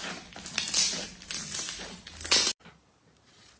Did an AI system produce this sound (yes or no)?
no